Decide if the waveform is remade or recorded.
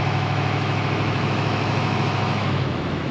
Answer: remade